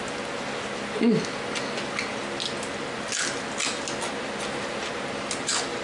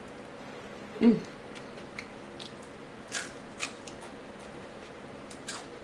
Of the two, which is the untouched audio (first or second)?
first